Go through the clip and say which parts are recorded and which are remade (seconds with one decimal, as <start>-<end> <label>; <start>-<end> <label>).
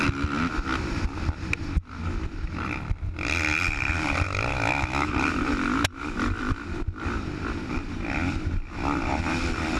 0.0-4.5 recorded; 4.5-5.1 remade; 5.1-9.8 recorded